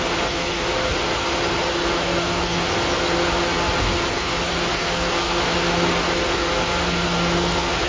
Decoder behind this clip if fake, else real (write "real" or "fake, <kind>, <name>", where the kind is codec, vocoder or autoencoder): real